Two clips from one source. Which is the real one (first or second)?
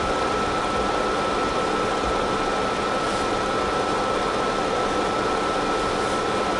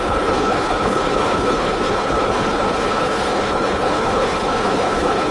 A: first